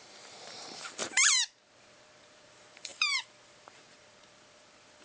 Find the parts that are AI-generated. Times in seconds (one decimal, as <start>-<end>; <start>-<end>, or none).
0.0-5.0